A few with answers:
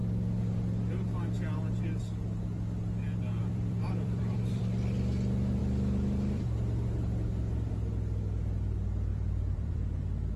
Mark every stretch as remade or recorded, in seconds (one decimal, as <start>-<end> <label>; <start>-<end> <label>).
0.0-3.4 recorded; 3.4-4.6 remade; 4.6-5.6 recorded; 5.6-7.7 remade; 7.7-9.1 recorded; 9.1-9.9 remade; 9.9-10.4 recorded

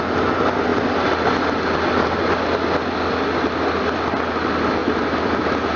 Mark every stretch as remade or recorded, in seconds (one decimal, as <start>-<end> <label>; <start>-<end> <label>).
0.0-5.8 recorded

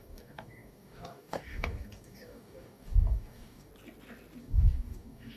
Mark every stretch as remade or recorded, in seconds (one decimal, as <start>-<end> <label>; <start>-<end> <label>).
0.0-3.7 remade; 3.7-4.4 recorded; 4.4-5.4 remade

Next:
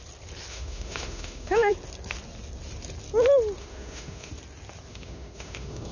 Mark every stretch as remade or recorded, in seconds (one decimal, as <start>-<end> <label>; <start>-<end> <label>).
0.0-0.5 recorded; 0.5-1.7 remade; 1.7-3.6 recorded; 3.6-4.3 remade; 4.3-4.9 recorded; 4.9-5.9 remade